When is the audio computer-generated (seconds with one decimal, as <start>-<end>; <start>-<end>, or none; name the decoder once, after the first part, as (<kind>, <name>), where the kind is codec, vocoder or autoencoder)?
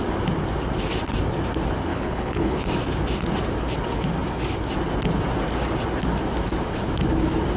1.9-2.6 (codec, HILCodec)